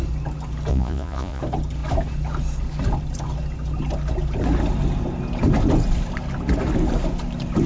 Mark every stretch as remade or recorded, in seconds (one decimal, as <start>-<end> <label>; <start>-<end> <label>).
0.0-0.7 recorded; 0.7-1.4 remade; 1.4-7.7 recorded